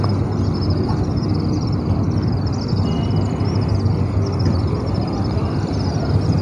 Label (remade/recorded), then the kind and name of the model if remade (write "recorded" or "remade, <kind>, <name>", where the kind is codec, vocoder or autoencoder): recorded